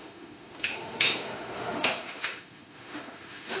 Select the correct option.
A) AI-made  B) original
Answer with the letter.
A